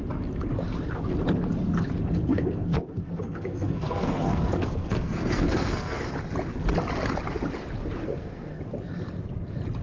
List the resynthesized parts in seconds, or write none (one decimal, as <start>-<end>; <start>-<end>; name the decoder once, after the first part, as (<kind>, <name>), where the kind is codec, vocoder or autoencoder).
2.3-6.1 (codec, SNAC); 8.0-8.6